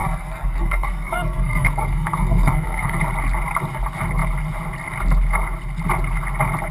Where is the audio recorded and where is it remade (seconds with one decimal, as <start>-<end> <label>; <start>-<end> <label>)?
0.0-3.0 remade; 3.0-6.7 recorded